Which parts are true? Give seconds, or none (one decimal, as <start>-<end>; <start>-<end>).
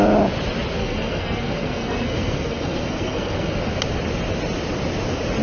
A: 0.0-0.8; 3.6-5.4